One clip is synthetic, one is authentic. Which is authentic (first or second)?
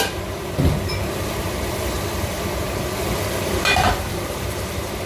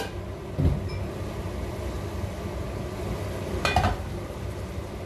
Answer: second